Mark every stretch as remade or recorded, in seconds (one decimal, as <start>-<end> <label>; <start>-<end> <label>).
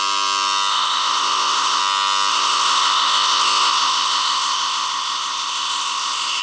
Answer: 0.0-0.7 recorded; 0.7-1.8 remade; 1.8-2.3 recorded; 2.3-6.4 remade